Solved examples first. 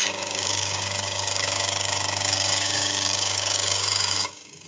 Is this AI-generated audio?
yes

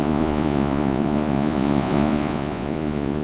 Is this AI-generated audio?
yes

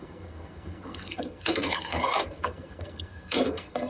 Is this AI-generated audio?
yes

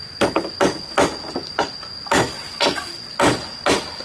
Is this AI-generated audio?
no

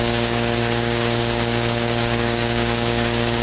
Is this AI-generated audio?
yes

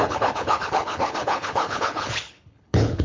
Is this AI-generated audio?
yes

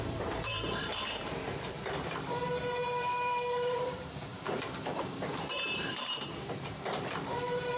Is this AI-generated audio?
yes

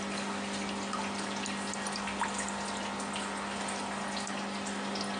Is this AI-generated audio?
no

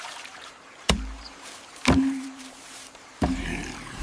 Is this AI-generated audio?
yes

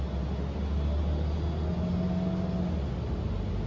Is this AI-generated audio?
no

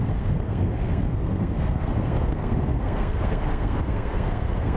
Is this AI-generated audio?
yes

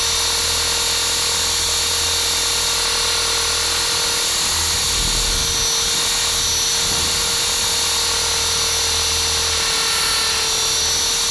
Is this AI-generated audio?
no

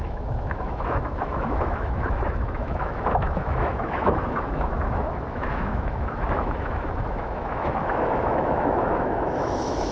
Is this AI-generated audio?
yes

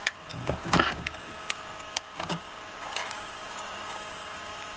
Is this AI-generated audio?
yes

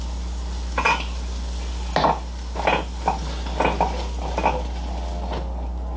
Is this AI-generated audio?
no